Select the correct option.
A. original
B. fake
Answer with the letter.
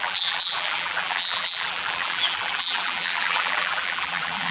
B